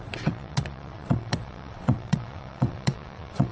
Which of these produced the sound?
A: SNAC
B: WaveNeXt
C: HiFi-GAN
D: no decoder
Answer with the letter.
B